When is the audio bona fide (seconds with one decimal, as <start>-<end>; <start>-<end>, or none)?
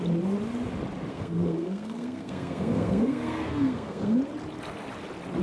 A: 0.0-1.1; 4.2-5.4